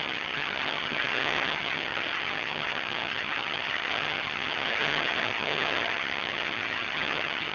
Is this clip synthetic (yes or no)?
yes